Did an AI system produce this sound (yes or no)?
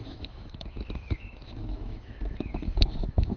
yes